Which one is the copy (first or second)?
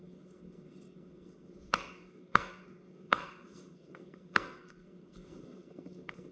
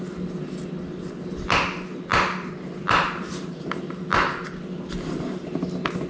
first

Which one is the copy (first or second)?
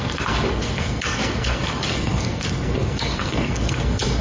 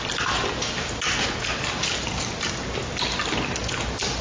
first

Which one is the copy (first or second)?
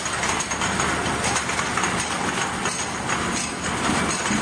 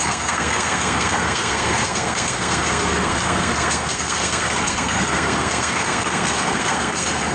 second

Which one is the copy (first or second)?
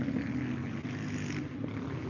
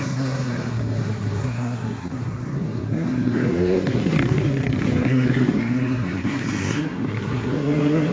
second